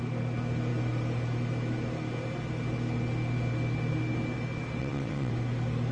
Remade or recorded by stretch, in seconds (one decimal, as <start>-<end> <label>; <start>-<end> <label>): 0.0-4.8 recorded; 4.8-5.3 remade; 5.3-5.9 recorded